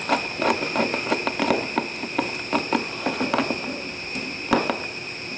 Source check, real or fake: real